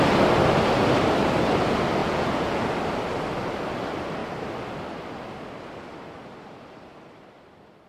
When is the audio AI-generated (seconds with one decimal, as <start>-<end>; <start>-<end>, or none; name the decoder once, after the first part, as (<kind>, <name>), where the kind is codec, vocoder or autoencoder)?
2.0-2.6 (vocoder, Vocos)